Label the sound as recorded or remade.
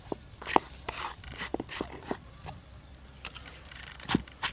remade